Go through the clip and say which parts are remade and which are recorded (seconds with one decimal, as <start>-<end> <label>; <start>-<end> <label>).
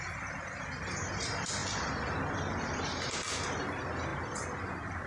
0.0-5.1 recorded